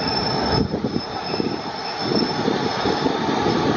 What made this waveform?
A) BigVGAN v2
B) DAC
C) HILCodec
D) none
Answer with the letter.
D